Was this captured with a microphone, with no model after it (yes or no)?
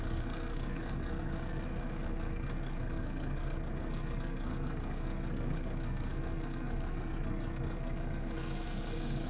no